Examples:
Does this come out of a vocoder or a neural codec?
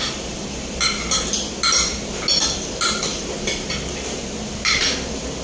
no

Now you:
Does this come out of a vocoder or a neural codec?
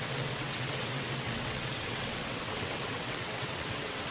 yes